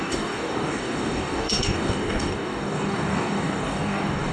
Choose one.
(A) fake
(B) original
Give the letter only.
A